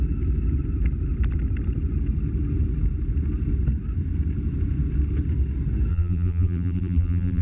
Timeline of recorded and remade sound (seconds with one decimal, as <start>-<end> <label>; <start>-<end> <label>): 0.0-5.9 recorded; 5.9-7.4 remade